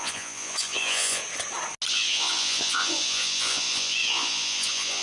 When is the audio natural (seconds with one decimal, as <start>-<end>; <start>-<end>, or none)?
1.2-1.9